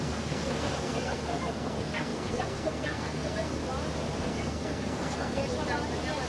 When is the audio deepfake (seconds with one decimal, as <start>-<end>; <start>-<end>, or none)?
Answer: 0.0-3.6; 4.2-5.4